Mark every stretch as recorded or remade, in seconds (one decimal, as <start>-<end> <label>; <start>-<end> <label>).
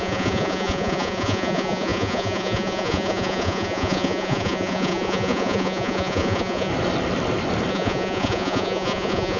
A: 0.0-6.7 remade; 6.7-7.7 recorded; 7.7-9.4 remade